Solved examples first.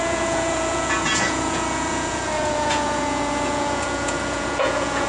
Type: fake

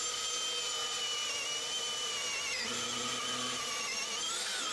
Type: real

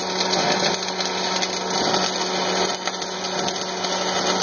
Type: real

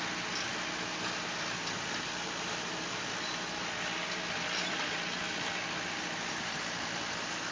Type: real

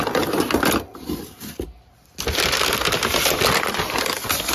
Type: real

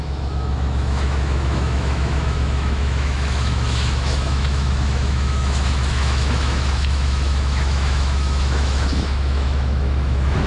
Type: fake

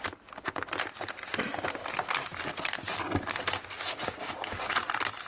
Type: real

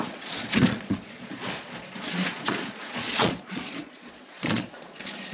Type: fake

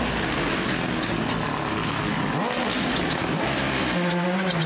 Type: real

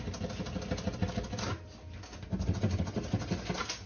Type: real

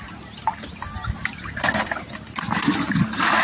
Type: real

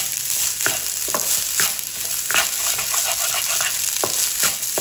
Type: real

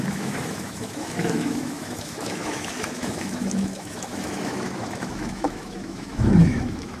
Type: fake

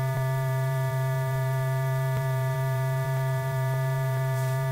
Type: fake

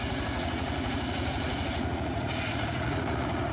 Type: fake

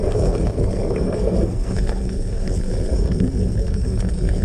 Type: fake